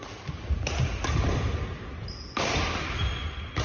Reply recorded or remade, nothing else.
recorded